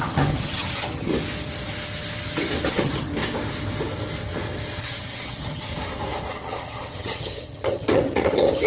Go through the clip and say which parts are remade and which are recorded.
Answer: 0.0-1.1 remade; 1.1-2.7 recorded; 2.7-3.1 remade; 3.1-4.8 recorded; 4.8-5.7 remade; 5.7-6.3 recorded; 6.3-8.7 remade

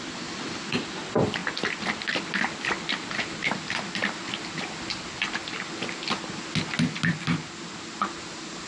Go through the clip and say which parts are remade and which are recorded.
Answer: 0.0-8.7 recorded

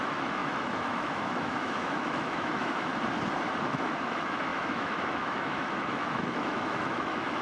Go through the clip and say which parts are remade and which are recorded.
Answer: 0.0-2.9 remade; 2.9-3.6 recorded; 3.6-7.4 remade

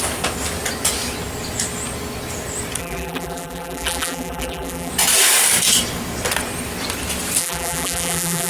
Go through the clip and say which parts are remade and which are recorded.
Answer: 0.0-2.8 recorded; 2.8-4.9 remade; 4.9-7.4 recorded; 7.4-8.5 remade

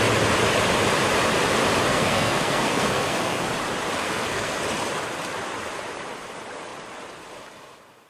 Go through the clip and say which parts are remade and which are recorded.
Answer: 0.0-1.9 recorded; 1.9-3.5 remade; 3.5-4.0 recorded; 4.0-4.6 remade; 4.6-8.1 recorded

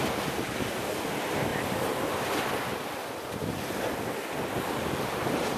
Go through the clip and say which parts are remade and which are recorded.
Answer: 0.0-5.6 recorded

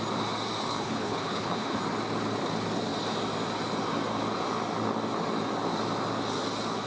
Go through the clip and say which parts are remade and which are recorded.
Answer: 0.0-0.7 recorded; 0.7-1.8 remade; 1.8-6.9 recorded

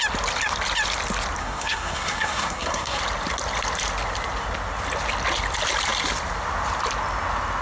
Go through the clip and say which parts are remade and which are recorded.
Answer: 0.0-1.4 recorded; 1.4-3.0 remade; 3.0-7.6 recorded